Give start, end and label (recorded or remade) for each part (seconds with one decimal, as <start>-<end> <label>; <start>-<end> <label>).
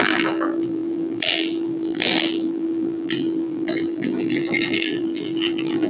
0.0-5.9 remade